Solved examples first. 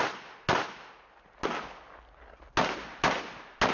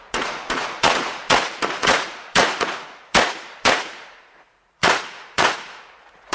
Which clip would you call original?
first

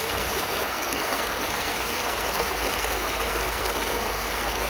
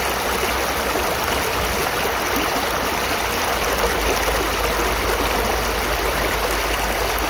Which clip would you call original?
second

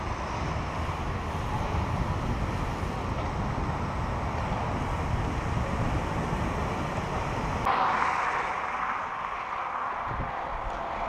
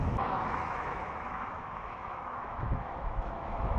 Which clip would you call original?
first